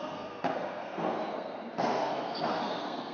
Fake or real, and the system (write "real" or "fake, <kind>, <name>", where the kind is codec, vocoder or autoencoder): fake, codec, SNAC